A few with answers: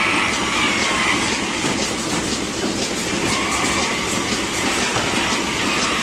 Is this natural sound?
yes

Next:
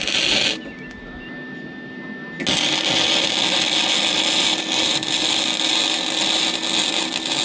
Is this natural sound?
yes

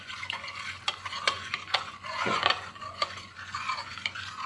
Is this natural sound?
no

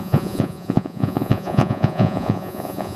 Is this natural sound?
no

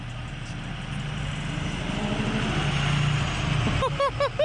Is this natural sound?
yes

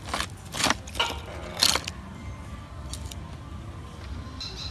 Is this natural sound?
yes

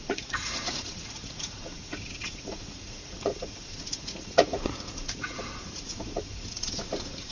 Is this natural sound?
no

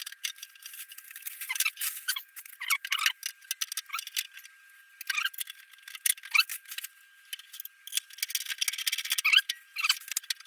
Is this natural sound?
yes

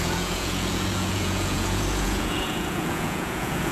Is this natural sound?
no